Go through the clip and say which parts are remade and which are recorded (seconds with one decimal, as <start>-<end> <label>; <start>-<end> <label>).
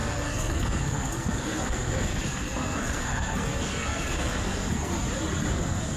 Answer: 0.0-4.9 remade; 4.9-5.5 recorded; 5.5-6.0 remade